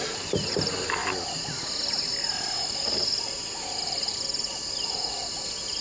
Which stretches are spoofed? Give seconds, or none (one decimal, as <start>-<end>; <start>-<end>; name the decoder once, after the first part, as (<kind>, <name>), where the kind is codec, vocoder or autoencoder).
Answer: none